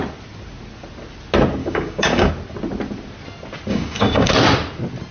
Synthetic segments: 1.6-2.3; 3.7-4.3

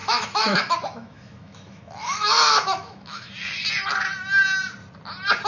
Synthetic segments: 0.0-3.3